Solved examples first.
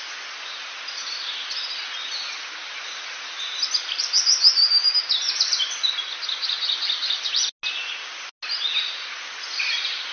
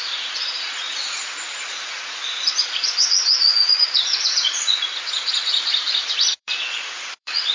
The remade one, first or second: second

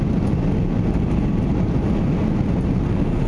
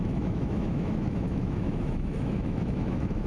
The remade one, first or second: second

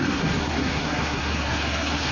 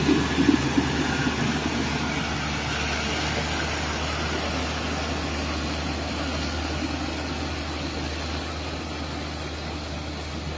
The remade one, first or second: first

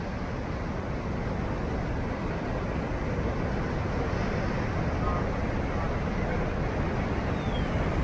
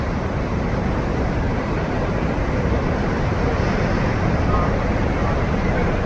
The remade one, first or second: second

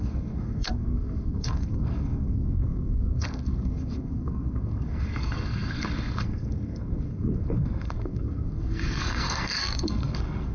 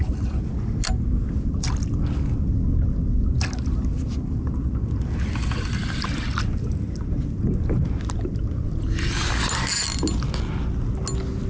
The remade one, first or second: first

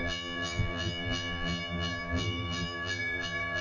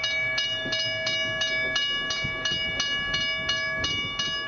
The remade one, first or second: first